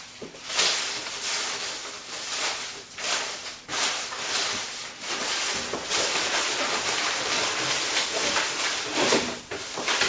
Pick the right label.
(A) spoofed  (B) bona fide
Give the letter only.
B